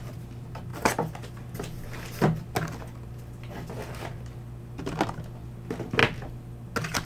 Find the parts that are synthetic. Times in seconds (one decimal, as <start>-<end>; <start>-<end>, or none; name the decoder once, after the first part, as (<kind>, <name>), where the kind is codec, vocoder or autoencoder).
none